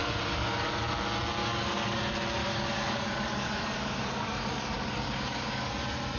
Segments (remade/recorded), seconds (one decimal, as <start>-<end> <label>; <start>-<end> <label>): 0.0-0.8 remade; 0.8-1.4 recorded; 1.4-2.0 remade; 2.0-2.4 recorded; 2.4-5.7 remade; 5.7-6.2 recorded